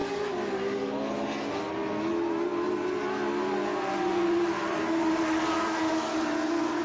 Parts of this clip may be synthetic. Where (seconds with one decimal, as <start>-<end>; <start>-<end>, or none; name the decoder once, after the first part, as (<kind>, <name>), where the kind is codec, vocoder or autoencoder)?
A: none